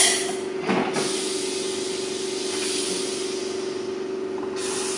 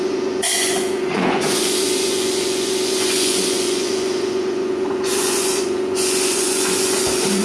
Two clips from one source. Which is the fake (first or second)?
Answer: second